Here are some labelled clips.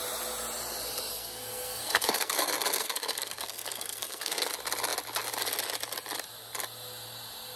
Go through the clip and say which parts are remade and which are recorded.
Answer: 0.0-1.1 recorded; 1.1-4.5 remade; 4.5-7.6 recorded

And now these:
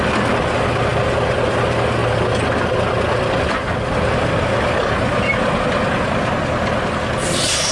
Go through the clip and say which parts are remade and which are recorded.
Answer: 0.0-7.7 recorded